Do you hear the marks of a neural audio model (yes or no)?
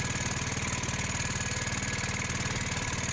no